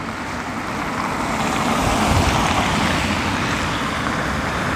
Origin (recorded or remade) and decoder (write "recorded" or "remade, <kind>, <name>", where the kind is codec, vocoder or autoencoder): recorded